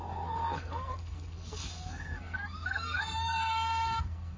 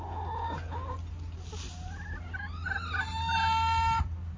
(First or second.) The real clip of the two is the second